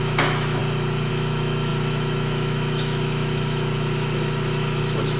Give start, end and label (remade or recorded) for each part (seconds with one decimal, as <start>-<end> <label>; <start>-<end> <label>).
0.0-0.6 remade; 0.6-1.1 recorded; 1.1-5.2 remade